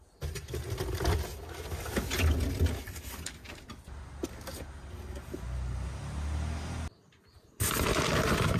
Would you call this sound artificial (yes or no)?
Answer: no